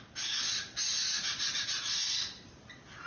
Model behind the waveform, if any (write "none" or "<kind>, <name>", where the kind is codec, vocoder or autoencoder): none